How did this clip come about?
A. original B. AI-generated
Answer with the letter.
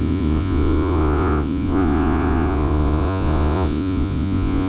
B